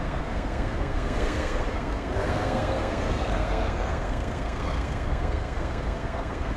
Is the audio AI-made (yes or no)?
yes